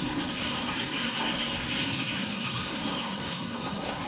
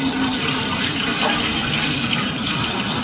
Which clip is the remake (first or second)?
first